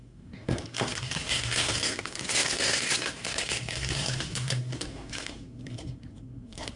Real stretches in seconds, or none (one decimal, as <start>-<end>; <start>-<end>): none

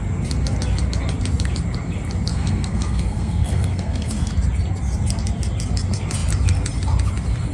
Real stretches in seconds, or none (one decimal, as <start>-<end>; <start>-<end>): 0.0-2.3; 4.3-7.5

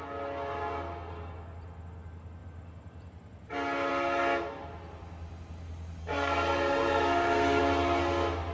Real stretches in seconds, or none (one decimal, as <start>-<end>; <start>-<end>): 0.0-6.0; 7.6-8.5

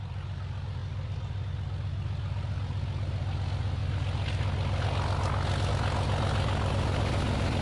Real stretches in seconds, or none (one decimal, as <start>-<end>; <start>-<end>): 0.0-7.6

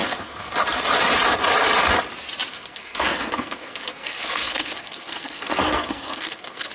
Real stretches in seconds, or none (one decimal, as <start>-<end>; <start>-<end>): 0.5-2.5

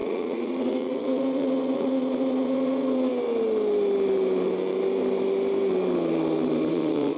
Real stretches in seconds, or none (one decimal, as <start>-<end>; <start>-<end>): 3.1-6.7

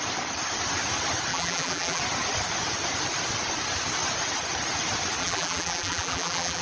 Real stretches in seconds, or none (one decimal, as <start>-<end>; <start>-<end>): 0.0-1.3; 2.0-5.2